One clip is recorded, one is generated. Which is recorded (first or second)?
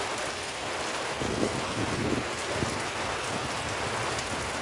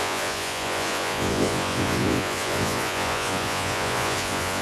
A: first